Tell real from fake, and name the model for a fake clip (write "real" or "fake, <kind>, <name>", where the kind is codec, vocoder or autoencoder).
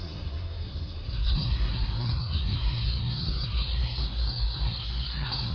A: fake, codec, SNAC